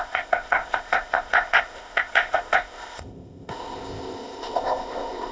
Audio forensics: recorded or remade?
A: remade